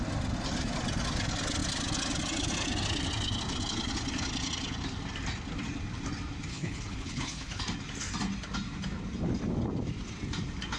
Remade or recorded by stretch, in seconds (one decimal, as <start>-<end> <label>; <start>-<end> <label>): 0.0-6.5 recorded; 6.5-7.6 remade; 7.6-10.8 recorded